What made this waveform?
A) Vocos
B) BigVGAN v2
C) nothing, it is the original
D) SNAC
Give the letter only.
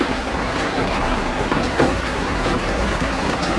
D